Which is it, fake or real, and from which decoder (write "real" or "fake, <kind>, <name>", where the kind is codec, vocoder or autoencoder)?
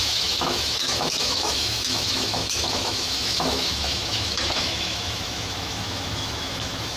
fake, autoencoder, DAC-VAE